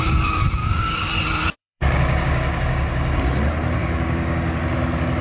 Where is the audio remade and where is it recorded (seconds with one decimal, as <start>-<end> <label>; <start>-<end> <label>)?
0.0-0.6 recorded; 0.6-1.1 remade; 1.1-1.6 recorded; 1.6-3.2 remade; 3.2-3.8 recorded; 3.8-4.6 remade; 4.6-5.2 recorded